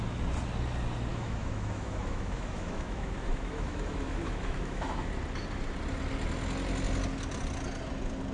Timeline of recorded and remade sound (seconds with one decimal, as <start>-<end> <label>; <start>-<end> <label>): 0.0-1.1 recorded; 1.1-5.1 remade; 5.1-8.3 recorded